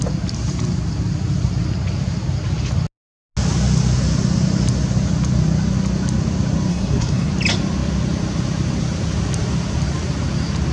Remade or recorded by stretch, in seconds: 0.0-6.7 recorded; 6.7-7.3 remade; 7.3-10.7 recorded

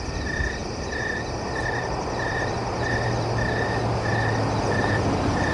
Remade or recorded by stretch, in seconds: 0.0-5.5 recorded

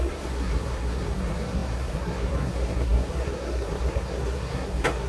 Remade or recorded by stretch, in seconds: 0.0-5.1 remade

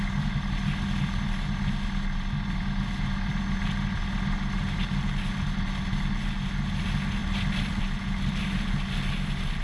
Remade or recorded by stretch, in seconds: 0.0-9.6 recorded

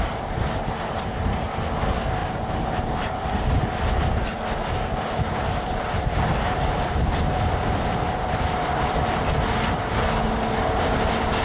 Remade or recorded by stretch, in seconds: 0.0-11.4 recorded

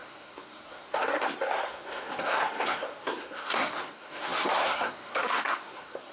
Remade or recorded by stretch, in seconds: 0.0-6.1 remade

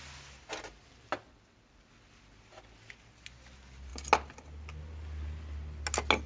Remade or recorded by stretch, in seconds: 0.0-6.3 recorded

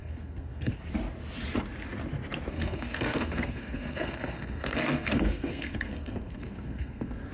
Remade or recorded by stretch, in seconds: 0.0-0.8 remade; 0.8-2.5 recorded; 2.5-7.3 remade